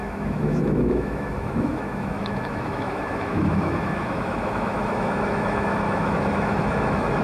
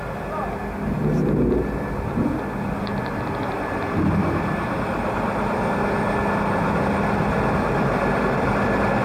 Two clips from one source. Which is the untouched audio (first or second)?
second